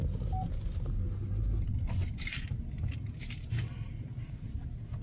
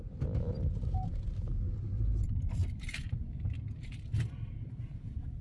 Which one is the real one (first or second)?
first